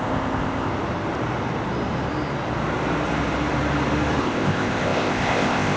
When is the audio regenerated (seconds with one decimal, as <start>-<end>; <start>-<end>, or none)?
0.0-0.7; 4.2-5.8